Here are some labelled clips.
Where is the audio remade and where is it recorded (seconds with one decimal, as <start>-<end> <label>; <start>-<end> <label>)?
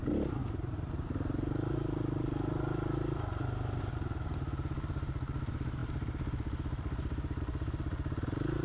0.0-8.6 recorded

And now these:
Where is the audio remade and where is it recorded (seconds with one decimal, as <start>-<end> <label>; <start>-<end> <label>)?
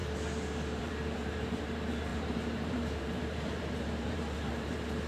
0.0-0.8 recorded; 0.8-5.1 remade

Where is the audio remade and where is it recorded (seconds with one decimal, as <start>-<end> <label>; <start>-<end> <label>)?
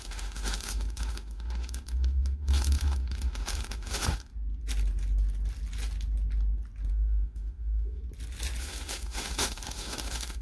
0.0-4.3 remade; 4.3-6.9 recorded; 6.9-8.0 remade; 8.0-8.6 recorded; 8.6-10.4 remade